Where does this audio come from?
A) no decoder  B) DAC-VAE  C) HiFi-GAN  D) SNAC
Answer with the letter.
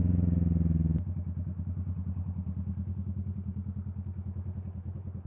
A